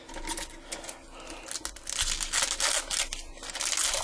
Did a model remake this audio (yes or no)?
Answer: no